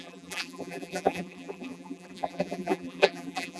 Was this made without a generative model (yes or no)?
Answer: no